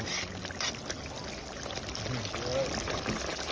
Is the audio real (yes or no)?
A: yes